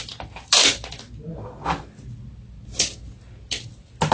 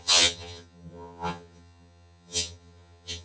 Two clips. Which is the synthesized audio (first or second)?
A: second